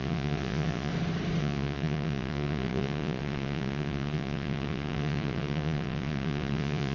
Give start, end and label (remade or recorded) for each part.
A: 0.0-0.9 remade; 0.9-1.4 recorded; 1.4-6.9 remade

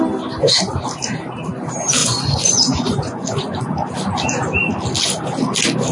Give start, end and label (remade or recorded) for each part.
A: 0.0-2.0 recorded; 2.0-3.7 remade; 3.7-5.9 recorded

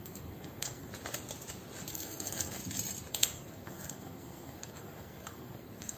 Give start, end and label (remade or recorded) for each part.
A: 0.0-0.9 remade; 0.9-1.9 recorded; 1.9-2.6 remade; 2.6-3.1 recorded; 3.1-6.0 remade

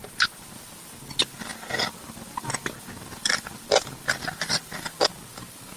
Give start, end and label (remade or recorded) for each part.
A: 0.0-1.5 recorded; 1.5-5.0 remade; 5.0-5.8 recorded

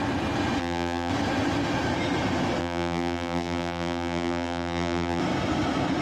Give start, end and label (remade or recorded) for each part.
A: 0.0-0.6 recorded; 0.6-1.1 remade; 1.1-2.6 recorded; 2.6-5.2 remade; 5.2-6.0 recorded

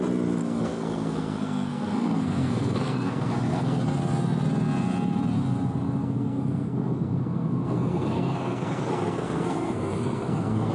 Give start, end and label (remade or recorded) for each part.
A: 0.0-0.4 recorded; 0.4-3.8 remade; 3.8-6.0 recorded; 6.0-10.7 remade

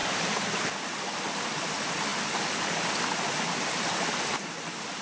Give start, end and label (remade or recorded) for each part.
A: 0.0-0.7 remade; 0.7-5.0 recorded